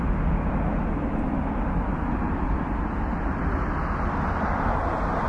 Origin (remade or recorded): recorded